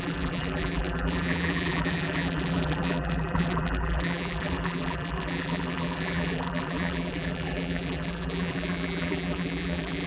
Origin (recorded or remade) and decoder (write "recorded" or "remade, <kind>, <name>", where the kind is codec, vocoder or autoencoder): remade, vocoder, BigVGAN v2